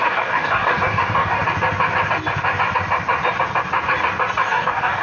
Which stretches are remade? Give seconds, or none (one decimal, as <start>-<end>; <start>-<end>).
0.0-1.4; 4.4-5.0